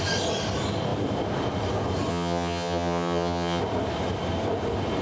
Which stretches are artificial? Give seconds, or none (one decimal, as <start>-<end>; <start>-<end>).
2.1-3.6